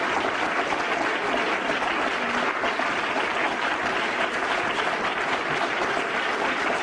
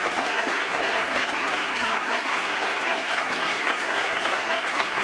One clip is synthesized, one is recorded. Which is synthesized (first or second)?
second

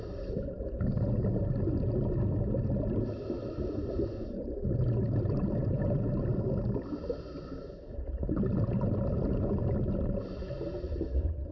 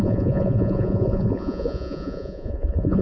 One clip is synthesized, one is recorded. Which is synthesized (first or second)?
second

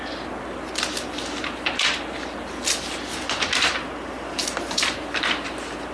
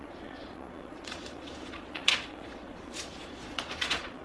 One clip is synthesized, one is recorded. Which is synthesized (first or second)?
second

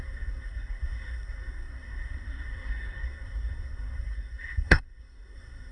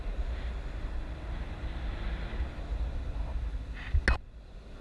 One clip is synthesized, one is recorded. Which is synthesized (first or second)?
first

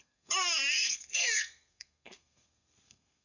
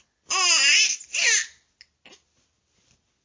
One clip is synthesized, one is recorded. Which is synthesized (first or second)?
first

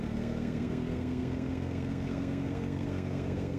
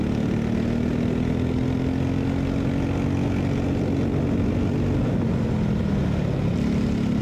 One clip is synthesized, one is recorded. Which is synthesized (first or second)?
first